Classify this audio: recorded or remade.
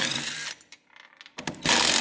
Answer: remade